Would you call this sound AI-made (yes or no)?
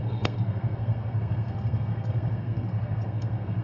yes